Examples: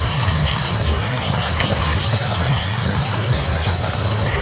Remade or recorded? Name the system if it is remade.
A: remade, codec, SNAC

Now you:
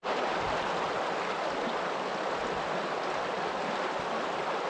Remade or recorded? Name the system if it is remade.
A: recorded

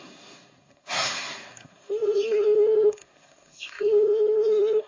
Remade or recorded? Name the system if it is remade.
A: remade, codec, SNAC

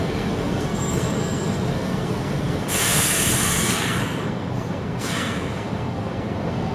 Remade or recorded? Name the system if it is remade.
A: remade, codec, SNAC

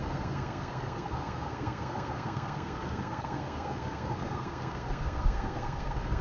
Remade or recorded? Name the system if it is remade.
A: remade, codec, SNAC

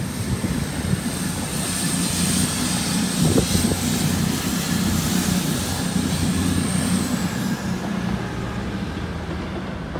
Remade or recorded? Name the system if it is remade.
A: recorded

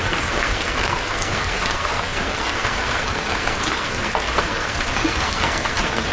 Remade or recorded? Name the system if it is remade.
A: remade, codec, SNAC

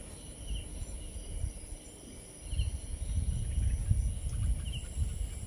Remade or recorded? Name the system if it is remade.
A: recorded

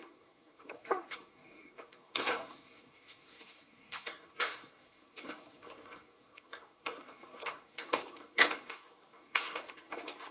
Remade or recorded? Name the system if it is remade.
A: remade, codec, SNAC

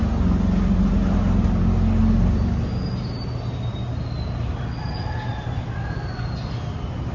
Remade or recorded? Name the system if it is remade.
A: recorded